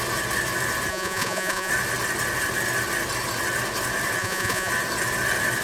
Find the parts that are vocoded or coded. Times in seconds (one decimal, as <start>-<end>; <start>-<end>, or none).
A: 0.9-1.7; 4.2-4.7